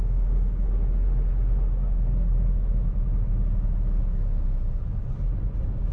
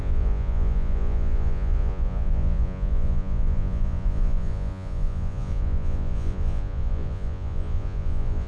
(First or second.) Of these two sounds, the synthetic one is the second